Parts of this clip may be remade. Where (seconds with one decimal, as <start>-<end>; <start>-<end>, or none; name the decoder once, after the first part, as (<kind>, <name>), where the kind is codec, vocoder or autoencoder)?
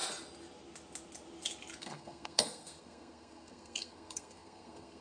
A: 1.8-5.0 (codec, SNAC)